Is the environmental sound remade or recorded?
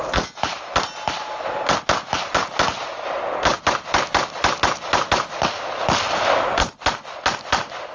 recorded